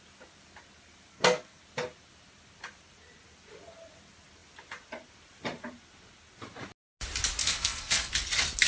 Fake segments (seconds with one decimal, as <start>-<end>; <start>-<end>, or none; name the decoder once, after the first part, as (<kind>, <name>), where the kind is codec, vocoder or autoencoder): 1.1-1.6 (codec, SNAC); 7.4-8.1